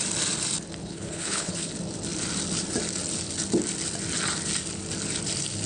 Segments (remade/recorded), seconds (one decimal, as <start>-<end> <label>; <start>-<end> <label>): 0.0-0.8 recorded; 0.8-1.7 remade; 1.7-5.7 recorded